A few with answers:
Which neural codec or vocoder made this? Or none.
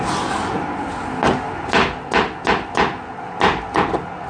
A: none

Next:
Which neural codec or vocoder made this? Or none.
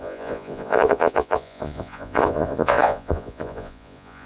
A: vocoder, Vocos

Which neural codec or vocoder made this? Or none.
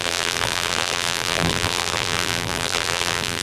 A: vocoder, BigVGAN v2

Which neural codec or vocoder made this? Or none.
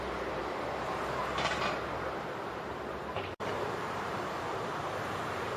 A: vocoder, BigVGAN v2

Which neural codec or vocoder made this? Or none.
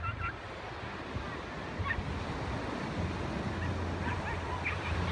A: none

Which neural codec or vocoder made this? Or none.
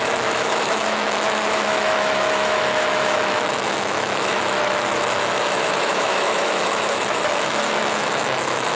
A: autoencoder, DAC-VAE